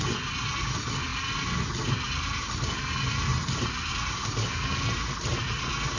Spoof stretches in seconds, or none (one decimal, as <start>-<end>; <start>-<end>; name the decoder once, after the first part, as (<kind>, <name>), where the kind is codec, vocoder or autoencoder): none